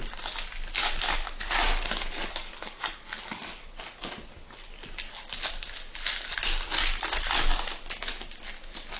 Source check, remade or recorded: recorded